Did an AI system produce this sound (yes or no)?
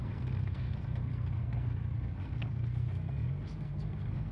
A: yes